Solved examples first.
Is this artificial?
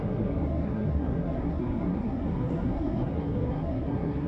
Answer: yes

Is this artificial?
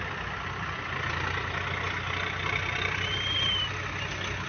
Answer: no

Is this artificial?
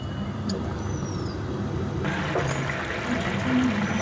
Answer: no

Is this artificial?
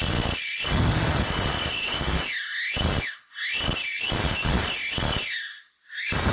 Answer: no